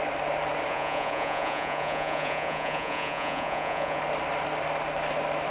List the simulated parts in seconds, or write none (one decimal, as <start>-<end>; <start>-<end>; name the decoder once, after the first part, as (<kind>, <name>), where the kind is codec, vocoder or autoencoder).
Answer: 0.7-4.0 (vocoder, Vocos)